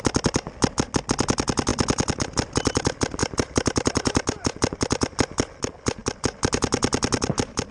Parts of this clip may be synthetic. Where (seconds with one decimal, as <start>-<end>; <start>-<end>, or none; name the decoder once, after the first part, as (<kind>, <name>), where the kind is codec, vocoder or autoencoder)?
3.2-4.5 (vocoder, BigVGAN v2)

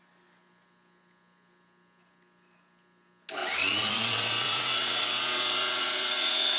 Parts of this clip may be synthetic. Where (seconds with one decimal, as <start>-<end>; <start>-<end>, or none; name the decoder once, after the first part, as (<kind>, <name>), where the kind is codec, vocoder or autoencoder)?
3.4-6.6 (vocoder, WaveNeXt)

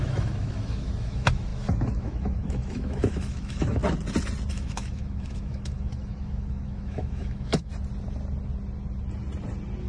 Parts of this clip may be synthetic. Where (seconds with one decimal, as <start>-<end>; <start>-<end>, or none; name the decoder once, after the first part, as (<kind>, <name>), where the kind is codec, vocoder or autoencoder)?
0.0-3.8 (autoencoder, DAC-VAE); 4.5-7.7